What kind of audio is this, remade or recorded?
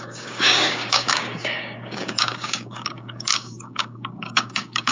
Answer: remade